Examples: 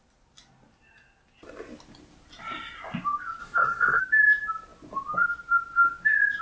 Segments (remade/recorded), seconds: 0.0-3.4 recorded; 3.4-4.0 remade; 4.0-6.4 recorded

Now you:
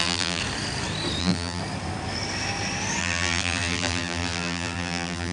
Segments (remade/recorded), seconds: 0.0-0.4 remade; 0.4-1.2 recorded; 1.2-1.6 remade; 1.6-3.0 recorded; 3.0-5.3 remade